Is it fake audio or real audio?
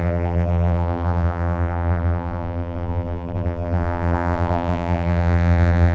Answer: fake